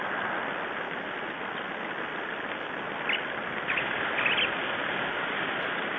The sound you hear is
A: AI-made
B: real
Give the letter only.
B